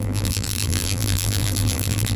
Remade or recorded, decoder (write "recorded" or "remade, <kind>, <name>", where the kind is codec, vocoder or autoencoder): remade, vocoder, BigVGAN v2